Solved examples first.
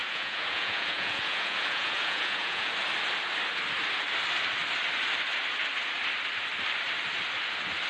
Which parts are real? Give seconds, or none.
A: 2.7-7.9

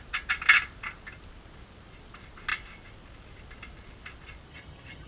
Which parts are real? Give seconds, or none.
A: 0.0-4.5

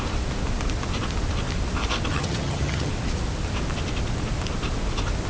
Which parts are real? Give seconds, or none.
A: 0.0-2.1; 2.9-5.3

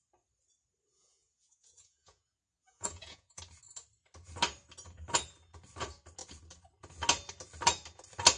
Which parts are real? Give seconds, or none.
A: 0.0-0.9; 3.4-8.4

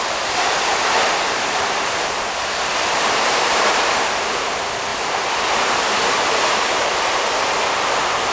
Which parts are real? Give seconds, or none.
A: 0.0-0.7; 3.9-4.9; 7.6-8.3

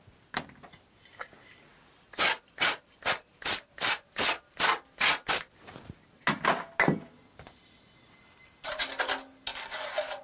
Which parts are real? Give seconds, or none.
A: 0.0-1.7; 4.5-10.2